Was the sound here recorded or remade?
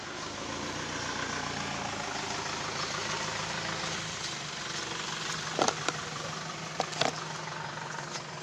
recorded